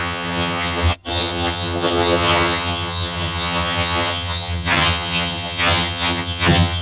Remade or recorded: remade